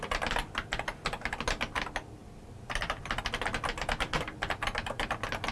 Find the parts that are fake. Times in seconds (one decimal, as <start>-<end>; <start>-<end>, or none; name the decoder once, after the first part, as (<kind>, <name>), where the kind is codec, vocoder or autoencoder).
2.2-3.2 (vocoder, BigVGAN v2)